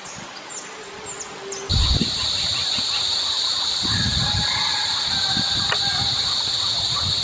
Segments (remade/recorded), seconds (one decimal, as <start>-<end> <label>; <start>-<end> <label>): 0.0-7.2 recorded